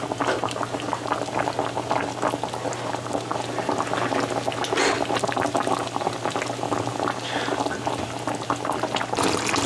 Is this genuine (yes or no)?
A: yes